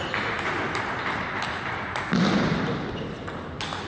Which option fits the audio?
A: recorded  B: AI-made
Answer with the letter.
A